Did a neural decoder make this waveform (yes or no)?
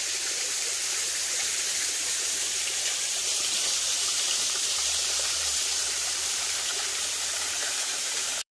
yes